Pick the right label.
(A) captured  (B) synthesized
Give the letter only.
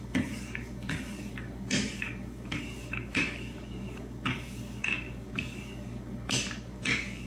B